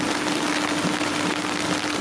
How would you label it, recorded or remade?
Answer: recorded